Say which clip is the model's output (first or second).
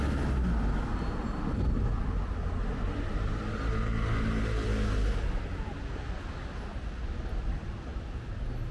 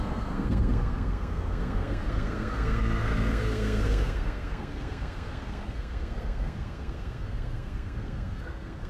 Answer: second